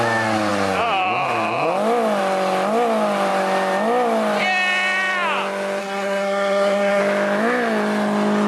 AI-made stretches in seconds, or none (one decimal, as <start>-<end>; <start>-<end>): 5.8-7.0